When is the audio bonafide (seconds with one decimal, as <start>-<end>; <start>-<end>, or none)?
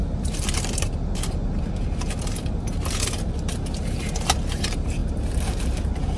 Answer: 0.9-6.2